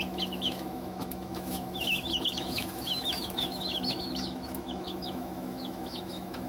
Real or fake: fake